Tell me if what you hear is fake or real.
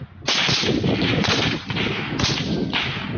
real